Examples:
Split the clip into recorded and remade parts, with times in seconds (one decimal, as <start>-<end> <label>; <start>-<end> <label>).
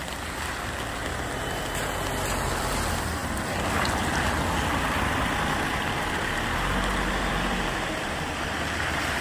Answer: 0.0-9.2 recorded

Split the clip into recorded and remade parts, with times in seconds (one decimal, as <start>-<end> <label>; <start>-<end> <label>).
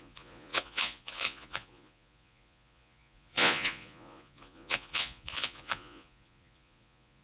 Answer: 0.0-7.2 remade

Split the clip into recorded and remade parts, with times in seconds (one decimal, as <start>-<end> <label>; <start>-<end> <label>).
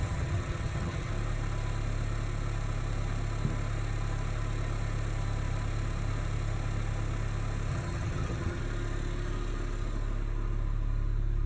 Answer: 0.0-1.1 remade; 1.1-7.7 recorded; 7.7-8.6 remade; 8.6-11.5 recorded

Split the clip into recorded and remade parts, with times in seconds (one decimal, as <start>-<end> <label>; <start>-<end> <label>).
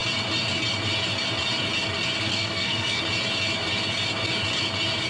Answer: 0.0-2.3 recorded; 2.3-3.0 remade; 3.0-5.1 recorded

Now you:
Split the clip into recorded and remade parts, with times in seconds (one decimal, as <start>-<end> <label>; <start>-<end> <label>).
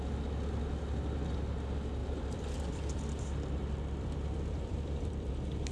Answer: 0.0-2.0 recorded; 2.0-5.3 remade; 5.3-5.7 recorded